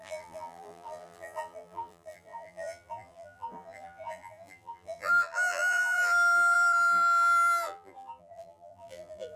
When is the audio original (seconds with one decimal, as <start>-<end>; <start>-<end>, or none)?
none